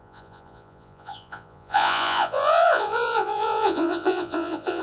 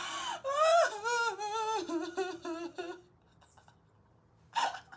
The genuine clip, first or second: second